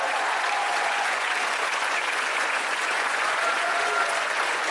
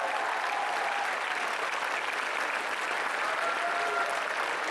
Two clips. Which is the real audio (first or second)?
second